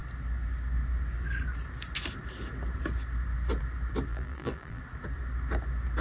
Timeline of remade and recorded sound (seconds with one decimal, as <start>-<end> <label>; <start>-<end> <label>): 0.0-4.1 recorded; 4.1-4.8 remade; 4.8-6.0 recorded